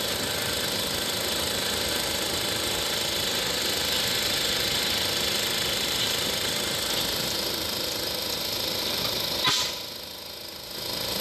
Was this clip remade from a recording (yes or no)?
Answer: no